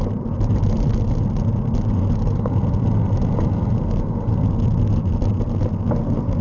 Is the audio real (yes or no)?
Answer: yes